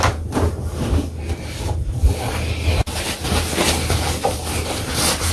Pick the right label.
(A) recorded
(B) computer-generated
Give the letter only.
A